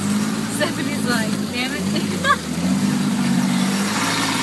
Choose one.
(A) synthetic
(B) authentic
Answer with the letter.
A